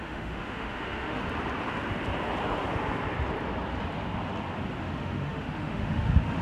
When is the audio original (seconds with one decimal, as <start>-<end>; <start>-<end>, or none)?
1.2-4.8